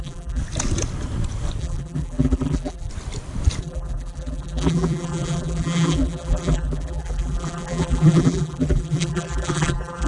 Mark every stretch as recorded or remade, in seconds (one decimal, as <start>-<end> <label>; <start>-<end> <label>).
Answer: 0.0-0.4 remade; 0.4-1.6 recorded; 1.6-2.9 remade; 2.9-3.6 recorded; 3.6-10.1 remade